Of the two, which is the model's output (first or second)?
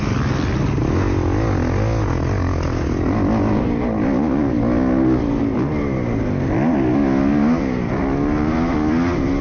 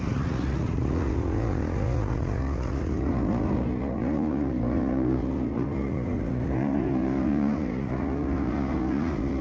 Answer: second